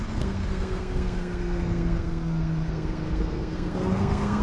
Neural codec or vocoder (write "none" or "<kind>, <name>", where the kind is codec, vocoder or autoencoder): codec, SNAC